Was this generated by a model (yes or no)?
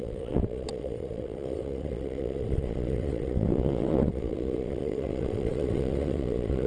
yes